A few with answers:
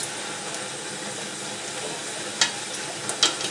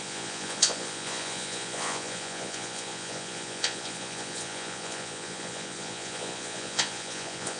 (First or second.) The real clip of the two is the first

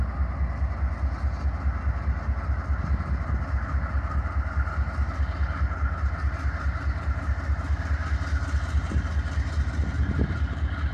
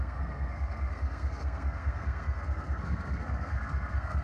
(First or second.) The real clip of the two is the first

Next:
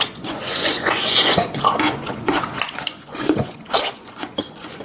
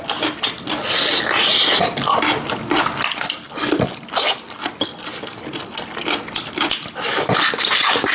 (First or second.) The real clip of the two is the second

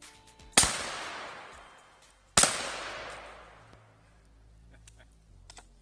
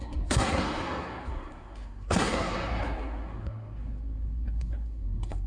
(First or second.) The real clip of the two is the first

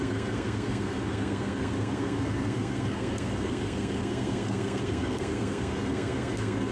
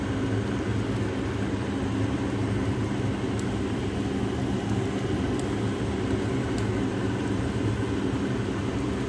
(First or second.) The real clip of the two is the second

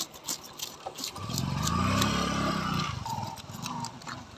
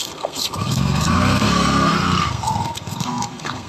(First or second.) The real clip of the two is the first